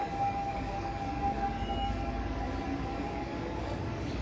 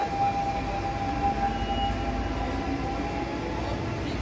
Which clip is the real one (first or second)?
second